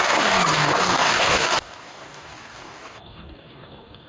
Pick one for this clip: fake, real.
fake